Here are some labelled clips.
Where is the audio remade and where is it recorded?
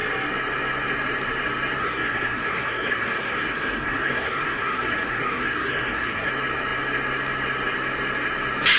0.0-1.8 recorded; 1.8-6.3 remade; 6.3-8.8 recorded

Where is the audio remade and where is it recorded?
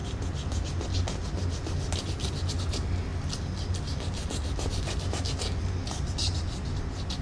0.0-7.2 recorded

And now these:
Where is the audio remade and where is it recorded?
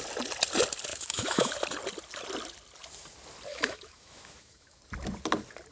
0.0-0.9 recorded; 0.9-1.5 remade; 1.5-3.5 recorded; 3.5-4.8 remade; 4.8-5.7 recorded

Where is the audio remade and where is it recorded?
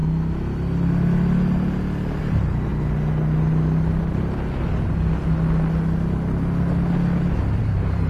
0.0-2.2 recorded; 2.2-2.7 remade; 2.7-7.6 recorded; 7.6-8.1 remade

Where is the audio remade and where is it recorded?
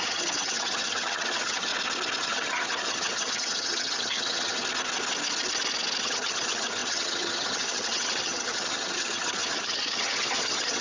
0.0-1.7 remade; 1.7-2.2 recorded; 2.2-4.6 remade; 4.6-6.0 recorded; 6.0-10.8 remade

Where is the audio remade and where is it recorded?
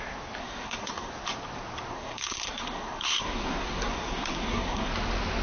0.0-0.4 recorded; 0.4-1.1 remade; 1.1-1.9 recorded; 1.9-4.9 remade; 4.9-5.4 recorded